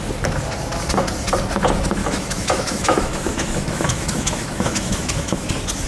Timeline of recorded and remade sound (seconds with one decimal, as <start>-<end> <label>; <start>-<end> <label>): 0.0-2.0 recorded; 2.0-5.5 remade; 5.5-5.9 recorded